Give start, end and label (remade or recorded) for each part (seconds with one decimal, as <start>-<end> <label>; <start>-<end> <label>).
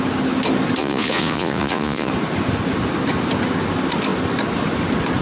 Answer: 0.0-0.8 recorded; 0.8-2.1 remade; 2.1-5.2 recorded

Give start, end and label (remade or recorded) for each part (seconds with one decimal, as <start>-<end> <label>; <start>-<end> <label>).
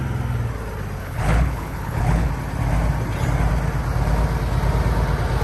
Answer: 0.0-1.0 recorded; 1.0-2.3 remade; 2.3-5.4 recorded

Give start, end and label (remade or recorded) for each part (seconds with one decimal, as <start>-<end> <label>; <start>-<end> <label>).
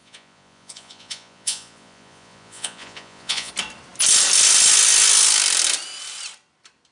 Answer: 0.0-3.5 remade; 3.5-6.9 recorded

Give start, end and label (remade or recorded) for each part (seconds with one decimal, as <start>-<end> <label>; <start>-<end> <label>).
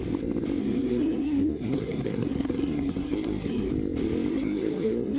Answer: 0.0-0.6 recorded; 0.6-3.7 remade; 3.7-4.3 recorded; 4.3-5.2 remade